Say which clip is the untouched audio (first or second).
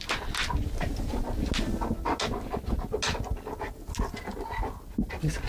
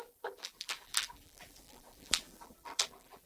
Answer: first